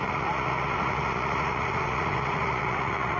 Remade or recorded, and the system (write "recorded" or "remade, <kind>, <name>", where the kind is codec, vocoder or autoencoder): remade, vocoder, Vocos